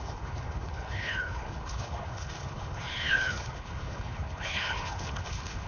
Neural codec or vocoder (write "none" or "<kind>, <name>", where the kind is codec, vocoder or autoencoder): codec, HILCodec